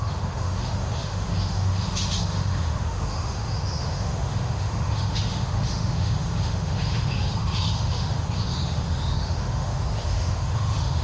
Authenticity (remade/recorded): remade